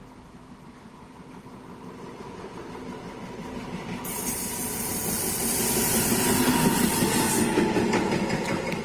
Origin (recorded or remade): recorded